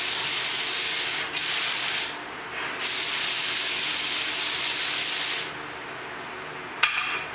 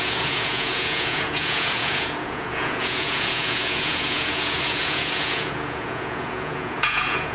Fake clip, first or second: second